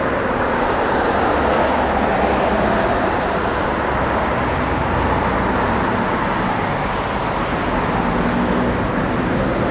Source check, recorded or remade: recorded